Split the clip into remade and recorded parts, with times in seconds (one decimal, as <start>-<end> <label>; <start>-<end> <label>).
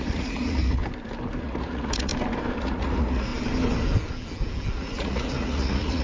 0.0-0.8 remade; 0.8-1.4 recorded; 1.4-2.1 remade; 2.1-2.6 recorded; 2.6-3.3 remade; 3.3-4.8 recorded; 4.8-6.0 remade